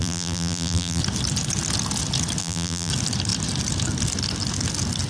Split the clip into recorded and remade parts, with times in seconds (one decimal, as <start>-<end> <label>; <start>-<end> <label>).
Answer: 0.0-1.0 remade; 1.0-2.4 recorded; 2.4-2.9 remade; 2.9-5.1 recorded